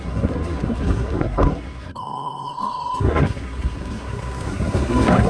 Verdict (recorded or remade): remade